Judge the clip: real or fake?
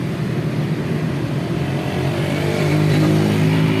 fake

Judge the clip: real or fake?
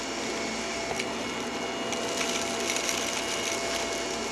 real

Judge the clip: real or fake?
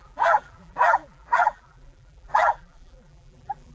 fake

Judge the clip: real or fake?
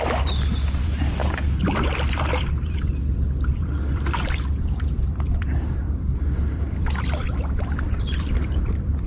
fake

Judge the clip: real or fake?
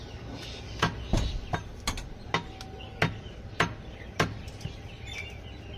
real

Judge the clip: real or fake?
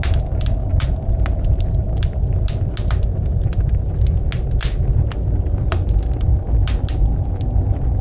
real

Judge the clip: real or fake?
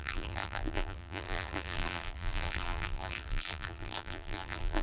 fake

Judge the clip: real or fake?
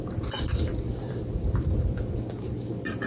fake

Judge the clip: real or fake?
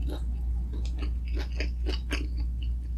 real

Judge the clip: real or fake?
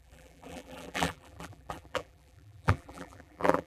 fake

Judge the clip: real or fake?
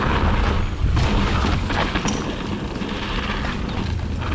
real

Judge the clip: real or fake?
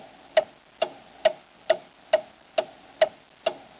real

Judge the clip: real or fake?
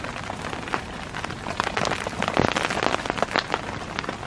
real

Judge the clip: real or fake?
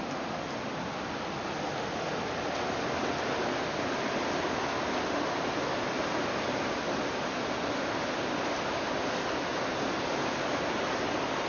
real